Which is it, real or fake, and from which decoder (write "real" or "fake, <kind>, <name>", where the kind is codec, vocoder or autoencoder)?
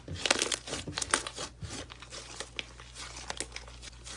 real